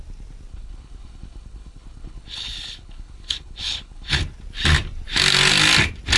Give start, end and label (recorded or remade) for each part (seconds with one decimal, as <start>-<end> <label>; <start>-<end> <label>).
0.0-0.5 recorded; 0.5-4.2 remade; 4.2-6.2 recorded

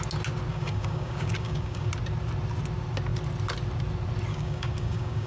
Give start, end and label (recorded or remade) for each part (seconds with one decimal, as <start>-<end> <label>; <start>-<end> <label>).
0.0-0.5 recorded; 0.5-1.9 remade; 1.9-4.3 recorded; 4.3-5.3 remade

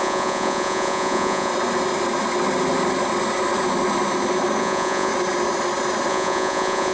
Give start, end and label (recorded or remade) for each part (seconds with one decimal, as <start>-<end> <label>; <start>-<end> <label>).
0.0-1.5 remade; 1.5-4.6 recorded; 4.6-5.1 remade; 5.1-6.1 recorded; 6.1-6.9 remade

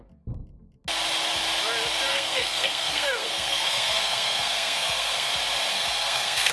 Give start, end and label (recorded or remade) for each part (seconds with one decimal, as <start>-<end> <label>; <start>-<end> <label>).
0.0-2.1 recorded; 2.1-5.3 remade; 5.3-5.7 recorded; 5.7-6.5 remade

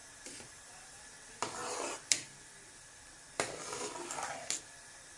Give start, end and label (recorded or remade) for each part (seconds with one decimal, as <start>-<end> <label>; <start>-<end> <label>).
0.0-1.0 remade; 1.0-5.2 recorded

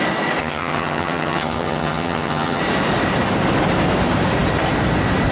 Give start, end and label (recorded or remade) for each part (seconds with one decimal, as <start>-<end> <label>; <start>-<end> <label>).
0.0-0.4 recorded; 0.4-2.6 remade; 2.6-5.3 recorded